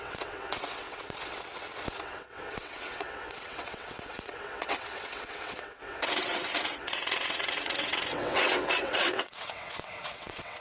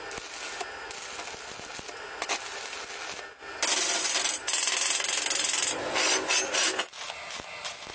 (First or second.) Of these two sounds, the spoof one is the first